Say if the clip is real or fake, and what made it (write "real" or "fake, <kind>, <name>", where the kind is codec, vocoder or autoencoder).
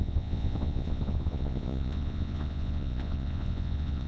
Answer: fake, vocoder, Vocos